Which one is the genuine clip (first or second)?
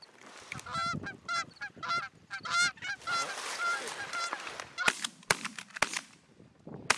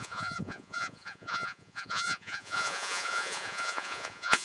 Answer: first